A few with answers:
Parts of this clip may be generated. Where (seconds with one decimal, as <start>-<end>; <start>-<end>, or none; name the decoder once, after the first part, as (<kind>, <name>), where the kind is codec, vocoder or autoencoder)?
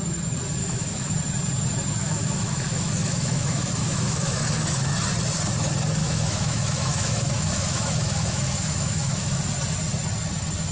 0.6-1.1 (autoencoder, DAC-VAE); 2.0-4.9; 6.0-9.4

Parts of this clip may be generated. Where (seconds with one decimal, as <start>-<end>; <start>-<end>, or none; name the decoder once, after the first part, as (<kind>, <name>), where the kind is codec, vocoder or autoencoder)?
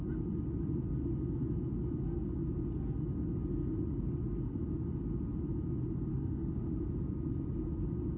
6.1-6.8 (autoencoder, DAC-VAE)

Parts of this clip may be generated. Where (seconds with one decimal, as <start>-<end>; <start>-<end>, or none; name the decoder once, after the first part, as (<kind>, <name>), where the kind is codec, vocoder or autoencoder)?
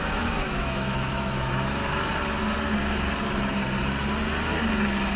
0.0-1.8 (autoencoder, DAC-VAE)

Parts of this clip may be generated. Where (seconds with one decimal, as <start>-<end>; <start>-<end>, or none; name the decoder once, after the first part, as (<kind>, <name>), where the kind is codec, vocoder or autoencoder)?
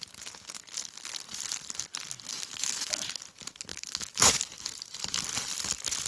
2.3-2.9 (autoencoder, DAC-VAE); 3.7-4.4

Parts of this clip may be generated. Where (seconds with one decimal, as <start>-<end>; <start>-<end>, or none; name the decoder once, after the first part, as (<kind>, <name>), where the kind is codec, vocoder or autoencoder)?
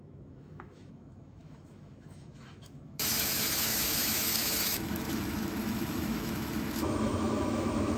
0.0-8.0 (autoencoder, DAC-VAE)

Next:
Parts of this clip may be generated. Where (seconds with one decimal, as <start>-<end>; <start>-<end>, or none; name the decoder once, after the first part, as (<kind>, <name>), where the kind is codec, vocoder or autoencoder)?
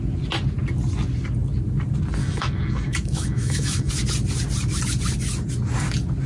2.2-3.9 (autoencoder, DAC-VAE)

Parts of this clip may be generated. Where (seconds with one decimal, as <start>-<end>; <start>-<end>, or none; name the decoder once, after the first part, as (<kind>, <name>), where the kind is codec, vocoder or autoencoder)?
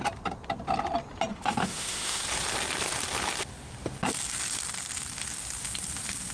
1.3-2.2 (autoencoder, DAC-VAE)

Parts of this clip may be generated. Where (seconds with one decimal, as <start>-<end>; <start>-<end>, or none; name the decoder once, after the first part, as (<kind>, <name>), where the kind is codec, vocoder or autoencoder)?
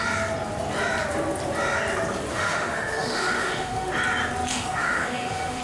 2.3-3.9 (autoencoder, DAC-VAE); 4.5-5.6